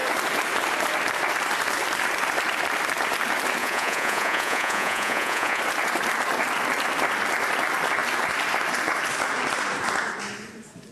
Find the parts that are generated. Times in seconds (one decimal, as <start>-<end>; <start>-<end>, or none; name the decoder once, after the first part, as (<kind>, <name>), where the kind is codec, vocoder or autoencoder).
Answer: 3.6-5.6 (vocoder, Vocos)